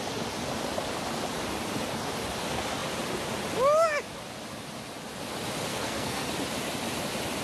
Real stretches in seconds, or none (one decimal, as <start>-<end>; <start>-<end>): 0.0-5.7; 6.3-7.4